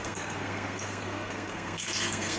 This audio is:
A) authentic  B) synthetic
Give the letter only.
B